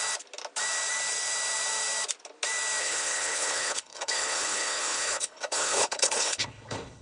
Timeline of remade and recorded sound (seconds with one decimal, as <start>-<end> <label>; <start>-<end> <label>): 0.0-2.8 recorded; 2.8-7.0 remade